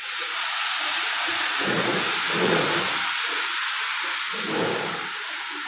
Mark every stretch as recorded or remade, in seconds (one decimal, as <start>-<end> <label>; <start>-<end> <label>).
0.0-3.4 remade; 3.4-5.7 recorded